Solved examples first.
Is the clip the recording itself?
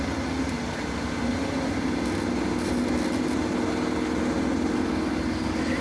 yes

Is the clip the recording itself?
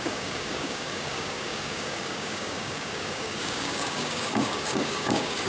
no